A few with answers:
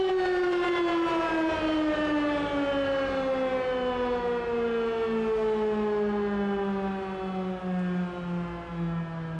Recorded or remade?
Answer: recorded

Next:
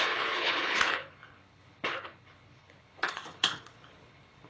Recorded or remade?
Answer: remade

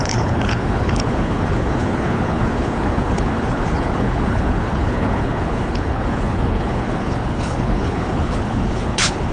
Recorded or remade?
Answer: remade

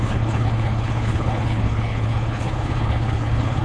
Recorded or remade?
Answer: remade